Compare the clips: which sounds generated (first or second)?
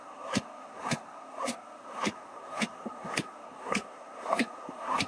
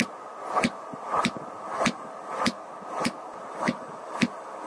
first